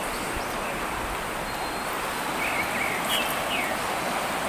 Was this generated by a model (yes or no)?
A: no